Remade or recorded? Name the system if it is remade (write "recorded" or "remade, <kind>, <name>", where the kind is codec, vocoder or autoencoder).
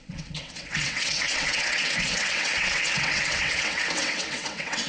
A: remade, vocoder, WaveNeXt